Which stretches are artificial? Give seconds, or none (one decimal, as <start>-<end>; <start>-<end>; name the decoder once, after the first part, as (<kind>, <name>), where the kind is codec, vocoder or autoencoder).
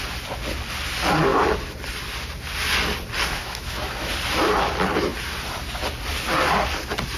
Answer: 3.4-4.1 (autoencoder, DAC-VAE)